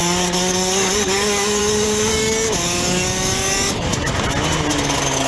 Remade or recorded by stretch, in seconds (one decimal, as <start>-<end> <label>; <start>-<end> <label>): 0.0-3.9 remade; 3.9-4.7 recorded; 4.7-5.3 remade